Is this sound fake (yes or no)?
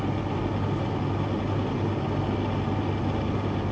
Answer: no